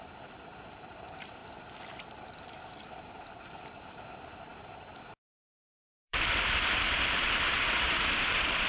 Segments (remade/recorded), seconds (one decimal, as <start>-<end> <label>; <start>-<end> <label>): 0.0-1.4 remade; 1.4-2.8 recorded; 2.8-8.7 remade

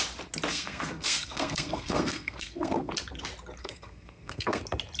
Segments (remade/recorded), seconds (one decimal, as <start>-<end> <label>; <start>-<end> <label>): 0.0-0.5 recorded; 0.5-2.9 remade; 2.9-3.6 recorded; 3.6-4.6 remade; 4.6-5.0 recorded

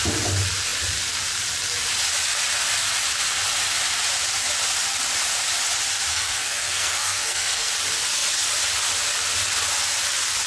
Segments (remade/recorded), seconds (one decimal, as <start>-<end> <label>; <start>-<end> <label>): 0.0-6.1 recorded; 6.1-7.7 remade; 7.7-10.5 recorded

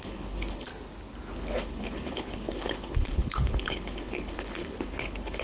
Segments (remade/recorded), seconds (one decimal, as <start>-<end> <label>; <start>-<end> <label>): 0.0-0.7 remade; 0.7-1.3 recorded; 1.3-5.4 remade

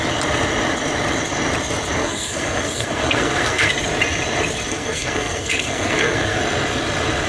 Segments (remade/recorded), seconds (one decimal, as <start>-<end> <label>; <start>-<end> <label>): 0.0-2.0 recorded; 2.0-3.7 remade; 3.7-4.7 recorded; 4.7-6.4 remade; 6.4-7.3 recorded

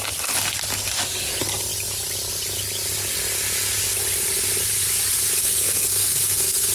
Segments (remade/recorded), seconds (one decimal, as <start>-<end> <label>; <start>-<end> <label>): 0.0-5.4 recorded; 5.4-6.7 remade

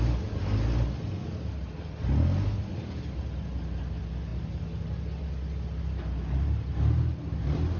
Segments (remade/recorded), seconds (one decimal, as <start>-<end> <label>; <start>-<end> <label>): 0.0-7.8 recorded